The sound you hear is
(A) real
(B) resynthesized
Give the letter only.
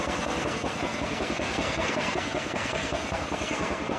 B